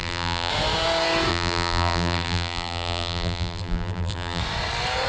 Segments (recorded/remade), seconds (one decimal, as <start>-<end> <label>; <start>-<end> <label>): 0.0-0.5 remade; 0.5-1.3 recorded; 1.3-4.4 remade; 4.4-5.1 recorded